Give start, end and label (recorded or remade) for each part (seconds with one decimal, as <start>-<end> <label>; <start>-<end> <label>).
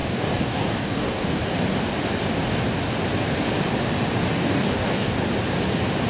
0.0-1.2 remade; 1.2-4.3 recorded; 4.3-5.2 remade; 5.2-6.1 recorded